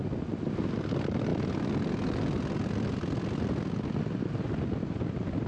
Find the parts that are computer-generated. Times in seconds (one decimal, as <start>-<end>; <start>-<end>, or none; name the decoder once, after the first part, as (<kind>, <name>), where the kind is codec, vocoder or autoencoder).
none